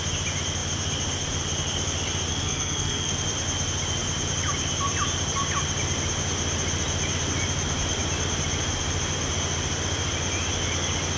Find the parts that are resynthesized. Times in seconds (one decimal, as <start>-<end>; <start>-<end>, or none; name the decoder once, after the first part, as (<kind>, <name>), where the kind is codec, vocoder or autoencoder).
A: 2.3-3.1 (codec, SNAC)